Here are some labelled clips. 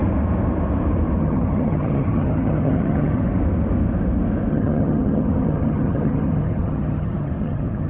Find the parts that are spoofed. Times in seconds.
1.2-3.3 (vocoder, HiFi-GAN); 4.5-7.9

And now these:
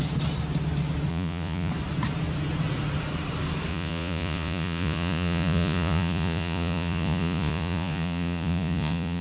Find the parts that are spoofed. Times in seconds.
1.1-1.7 (vocoder, Vocos); 3.7-9.2

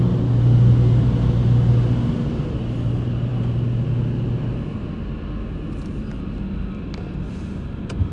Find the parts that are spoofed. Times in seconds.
none

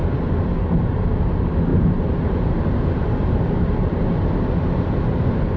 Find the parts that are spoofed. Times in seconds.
1.7-4.3 (vocoder, BigVGAN v2)